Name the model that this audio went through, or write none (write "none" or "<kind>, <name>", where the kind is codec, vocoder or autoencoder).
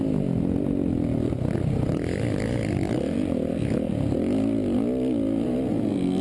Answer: none